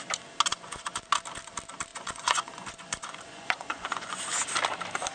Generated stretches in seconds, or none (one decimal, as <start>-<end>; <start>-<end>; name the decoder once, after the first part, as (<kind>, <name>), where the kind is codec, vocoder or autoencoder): 0.5-1.1 (vocoder, Vocos); 1.9-4.2